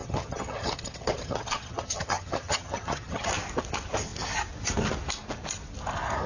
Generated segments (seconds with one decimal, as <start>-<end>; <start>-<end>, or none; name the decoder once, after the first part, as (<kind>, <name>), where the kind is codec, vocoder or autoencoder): 0.0-3.3 (vocoder, HiFi-GAN)